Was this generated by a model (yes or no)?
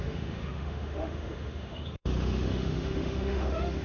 yes